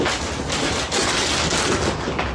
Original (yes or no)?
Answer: yes